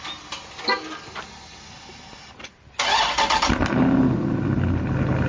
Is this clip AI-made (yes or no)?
no